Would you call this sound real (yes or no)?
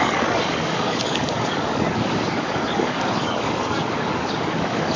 no